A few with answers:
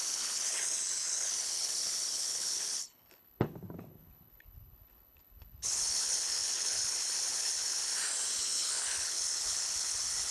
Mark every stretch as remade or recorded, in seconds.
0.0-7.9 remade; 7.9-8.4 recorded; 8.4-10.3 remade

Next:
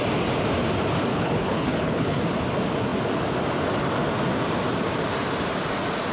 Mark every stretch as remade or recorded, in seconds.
0.0-1.1 recorded; 1.1-2.2 remade; 2.2-6.1 recorded

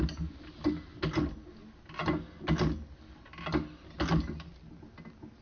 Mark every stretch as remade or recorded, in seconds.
0.0-5.4 recorded

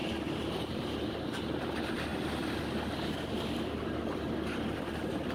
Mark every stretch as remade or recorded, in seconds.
0.0-0.7 remade; 0.7-5.3 recorded

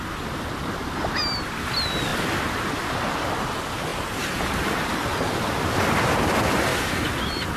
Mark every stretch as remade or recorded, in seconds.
0.0-3.9 recorded; 3.9-4.9 remade; 4.9-6.7 recorded; 6.7-7.6 remade

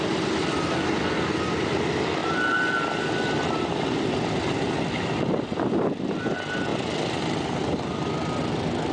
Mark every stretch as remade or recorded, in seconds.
0.0-8.9 recorded

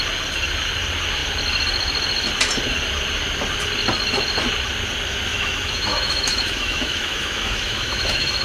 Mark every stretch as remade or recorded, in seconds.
0.0-5.3 recorded; 5.3-8.4 remade

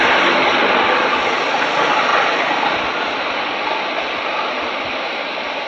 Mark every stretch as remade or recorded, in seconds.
0.0-5.7 recorded